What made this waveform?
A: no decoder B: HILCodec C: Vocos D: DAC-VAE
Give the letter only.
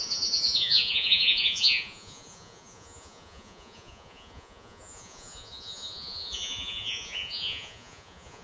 C